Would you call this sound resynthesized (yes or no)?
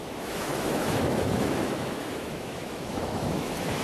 yes